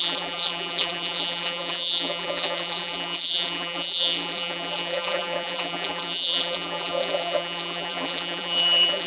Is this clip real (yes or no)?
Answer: no